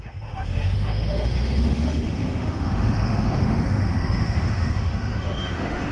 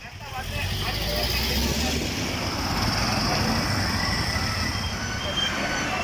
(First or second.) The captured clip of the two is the second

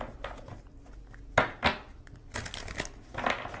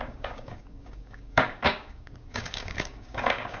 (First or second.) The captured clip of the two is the first